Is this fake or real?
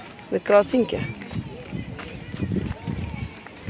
real